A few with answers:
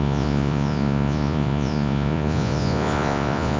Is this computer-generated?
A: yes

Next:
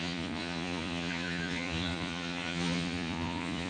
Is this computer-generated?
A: yes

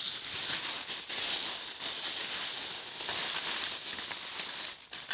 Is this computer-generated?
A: no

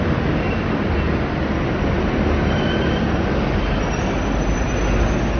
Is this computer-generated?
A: no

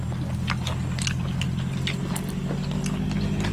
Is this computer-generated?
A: no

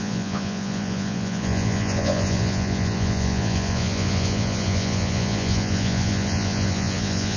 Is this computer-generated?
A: yes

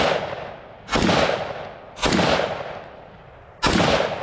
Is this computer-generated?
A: no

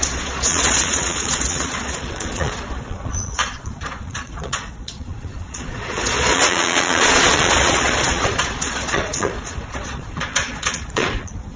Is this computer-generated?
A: yes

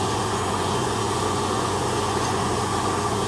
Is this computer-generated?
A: yes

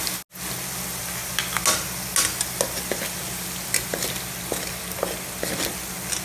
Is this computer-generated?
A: no